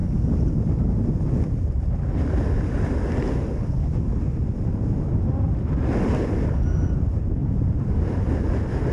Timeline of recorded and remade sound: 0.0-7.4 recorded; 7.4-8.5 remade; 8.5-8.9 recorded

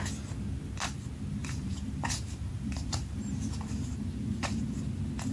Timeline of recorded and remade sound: 0.0-1.4 recorded; 1.4-4.6 remade; 4.6-5.3 recorded

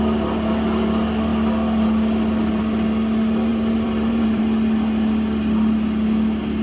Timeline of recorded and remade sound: 0.0-3.5 recorded; 3.5-4.4 remade; 4.4-6.6 recorded